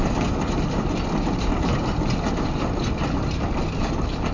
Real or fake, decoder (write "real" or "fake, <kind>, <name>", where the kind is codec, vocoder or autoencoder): real